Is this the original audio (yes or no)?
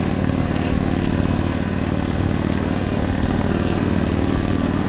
no